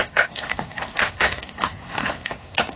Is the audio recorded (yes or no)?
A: no